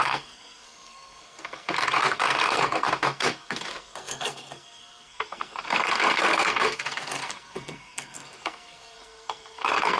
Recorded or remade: remade